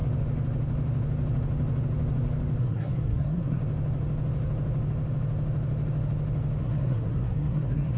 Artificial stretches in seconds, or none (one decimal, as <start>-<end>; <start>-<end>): 2.6-3.6; 6.6-8.0